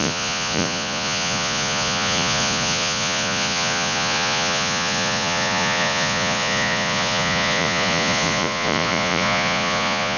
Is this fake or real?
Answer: fake